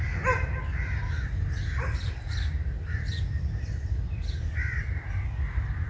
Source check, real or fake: real